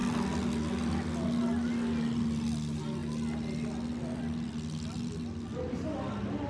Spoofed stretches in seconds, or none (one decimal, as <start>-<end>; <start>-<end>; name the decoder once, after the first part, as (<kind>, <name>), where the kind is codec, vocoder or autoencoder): none